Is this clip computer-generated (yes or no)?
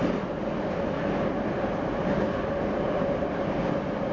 no